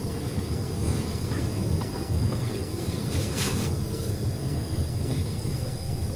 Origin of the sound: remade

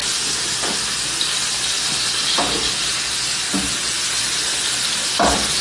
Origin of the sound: recorded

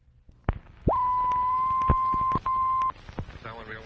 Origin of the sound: recorded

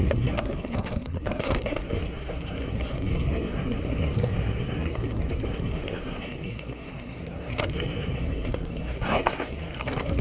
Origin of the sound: remade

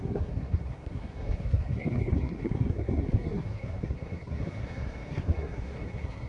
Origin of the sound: remade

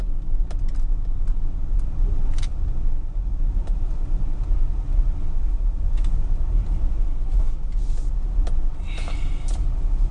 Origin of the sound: recorded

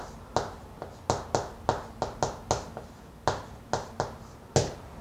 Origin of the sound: recorded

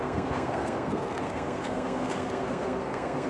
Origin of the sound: remade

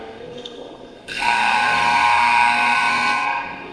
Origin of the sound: remade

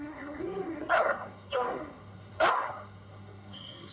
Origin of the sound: remade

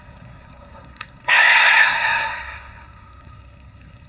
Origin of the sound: remade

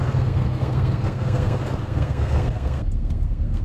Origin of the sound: remade